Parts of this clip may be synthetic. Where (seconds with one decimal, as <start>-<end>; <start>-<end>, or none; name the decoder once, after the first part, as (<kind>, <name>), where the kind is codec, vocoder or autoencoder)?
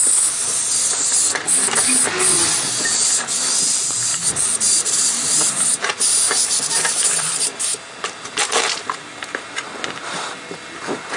4.1-8.9 (vocoder, BigVGAN v2)